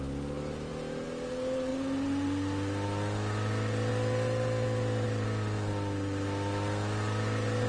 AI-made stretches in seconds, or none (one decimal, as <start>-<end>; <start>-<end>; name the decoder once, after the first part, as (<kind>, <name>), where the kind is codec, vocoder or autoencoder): none